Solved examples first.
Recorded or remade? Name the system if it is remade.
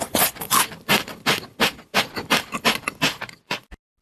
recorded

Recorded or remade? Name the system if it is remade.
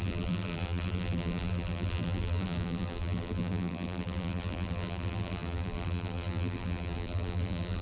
remade, vocoder, BigVGAN v2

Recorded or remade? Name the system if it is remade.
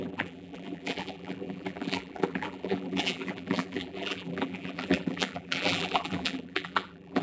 remade, vocoder, BigVGAN v2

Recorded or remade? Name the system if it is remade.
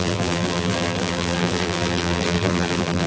remade, vocoder, BigVGAN v2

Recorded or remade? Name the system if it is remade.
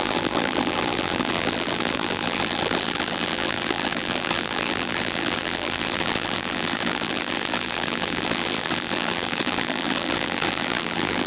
remade, vocoder, BigVGAN v2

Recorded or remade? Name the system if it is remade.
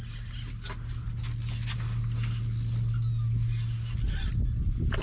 recorded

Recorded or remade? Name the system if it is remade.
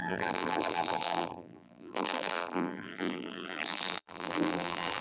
remade, vocoder, BigVGAN v2